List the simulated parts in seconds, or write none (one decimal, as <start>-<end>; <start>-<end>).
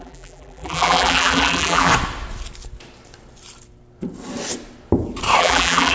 0.0-1.9; 5.4-5.9